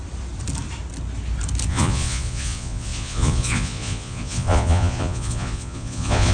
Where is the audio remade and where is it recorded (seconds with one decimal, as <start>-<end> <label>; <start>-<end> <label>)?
0.0-1.7 recorded; 1.7-6.3 remade